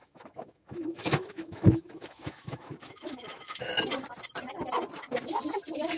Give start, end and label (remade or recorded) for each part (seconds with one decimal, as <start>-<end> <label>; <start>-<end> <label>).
0.0-3.6 remade; 3.6-6.0 recorded